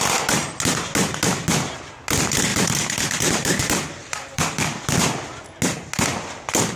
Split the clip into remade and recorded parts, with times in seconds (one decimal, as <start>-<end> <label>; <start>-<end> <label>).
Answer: 0.0-2.5 recorded; 2.5-3.6 remade; 3.6-4.0 recorded; 4.0-4.6 remade; 4.6-6.8 recorded